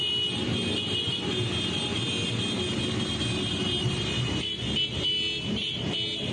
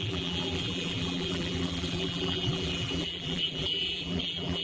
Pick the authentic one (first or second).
first